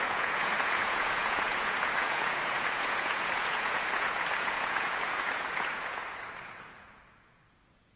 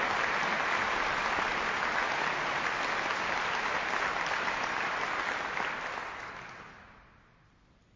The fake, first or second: first